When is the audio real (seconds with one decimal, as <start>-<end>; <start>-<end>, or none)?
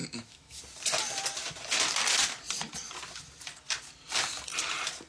0.6-5.1